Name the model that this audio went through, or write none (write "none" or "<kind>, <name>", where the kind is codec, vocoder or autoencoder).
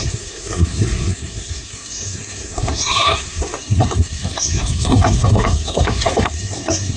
codec, SNAC